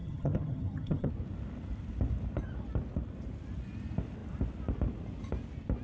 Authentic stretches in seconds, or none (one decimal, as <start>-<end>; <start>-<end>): 1.1-5.8

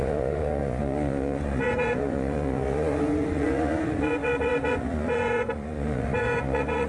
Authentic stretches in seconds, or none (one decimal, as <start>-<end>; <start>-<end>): none

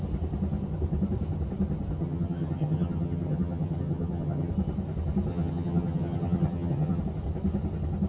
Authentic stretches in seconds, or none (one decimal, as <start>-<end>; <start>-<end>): 0.0-2.0; 4.5-5.3; 7.0-8.1

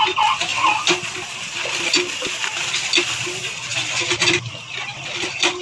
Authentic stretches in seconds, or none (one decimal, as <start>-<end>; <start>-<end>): 0.0-5.6